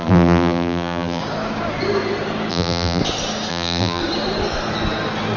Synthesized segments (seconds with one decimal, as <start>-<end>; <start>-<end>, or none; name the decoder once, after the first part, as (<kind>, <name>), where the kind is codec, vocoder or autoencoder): 0.0-1.2 (vocoder, BigVGAN v2); 2.5-3.0; 3.5-4.0